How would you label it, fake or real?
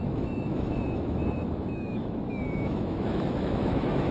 fake